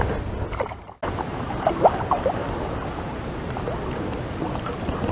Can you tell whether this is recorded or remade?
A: recorded